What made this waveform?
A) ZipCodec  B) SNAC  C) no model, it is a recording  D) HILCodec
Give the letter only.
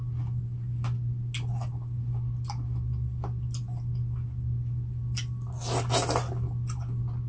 C